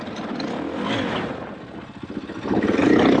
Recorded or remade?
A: recorded